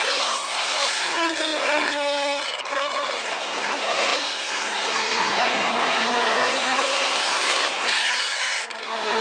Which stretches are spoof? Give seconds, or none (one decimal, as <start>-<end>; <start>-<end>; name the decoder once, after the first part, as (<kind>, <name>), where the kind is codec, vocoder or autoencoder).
0.0-9.2 (codec, SNAC)